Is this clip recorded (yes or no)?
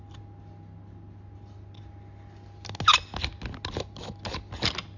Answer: yes